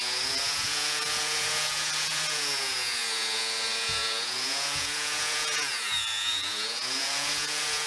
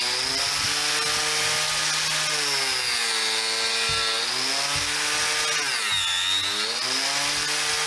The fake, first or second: first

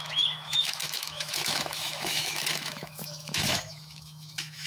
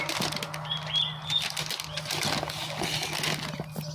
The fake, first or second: first